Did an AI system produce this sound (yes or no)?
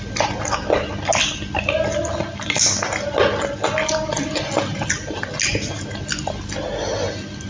no